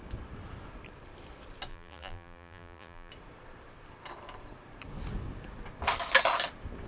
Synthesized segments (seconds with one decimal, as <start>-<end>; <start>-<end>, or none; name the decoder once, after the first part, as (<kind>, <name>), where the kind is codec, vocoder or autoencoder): 1.7-3.1 (vocoder, BigVGAN v2)